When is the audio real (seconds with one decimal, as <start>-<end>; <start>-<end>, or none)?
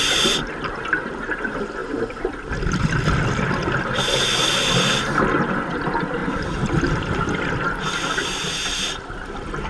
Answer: 0.0-9.7